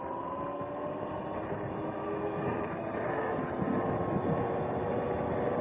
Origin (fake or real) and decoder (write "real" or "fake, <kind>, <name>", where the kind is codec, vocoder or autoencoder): real